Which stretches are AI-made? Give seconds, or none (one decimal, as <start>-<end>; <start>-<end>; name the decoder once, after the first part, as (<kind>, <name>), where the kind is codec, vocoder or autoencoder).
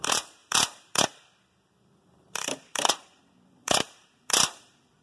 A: 0.4-3.2 (vocoder, BigVGAN v2); 3.6-5.0